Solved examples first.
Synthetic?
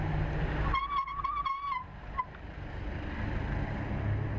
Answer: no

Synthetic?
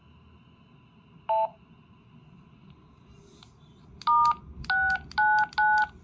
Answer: no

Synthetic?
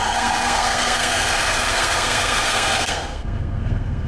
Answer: yes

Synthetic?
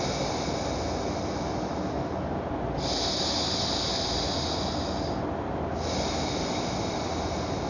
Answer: no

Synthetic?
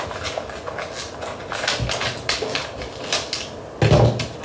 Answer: no